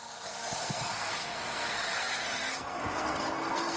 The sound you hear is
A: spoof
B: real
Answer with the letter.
A